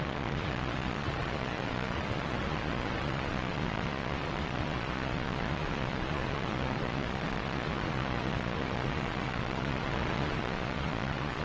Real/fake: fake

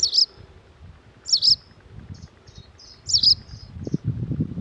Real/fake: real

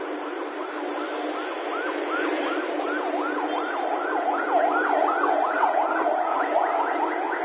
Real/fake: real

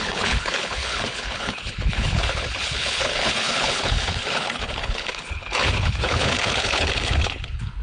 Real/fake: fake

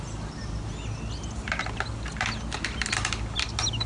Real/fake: real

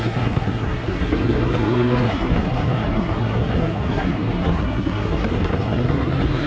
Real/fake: fake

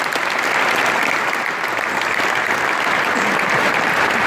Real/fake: real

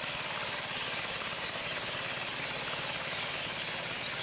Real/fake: real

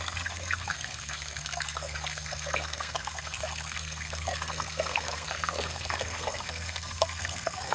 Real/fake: fake